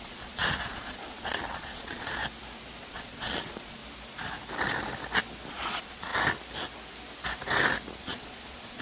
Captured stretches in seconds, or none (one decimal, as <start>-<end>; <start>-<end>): 2.2-2.8; 3.8-5.5; 6.1-8.0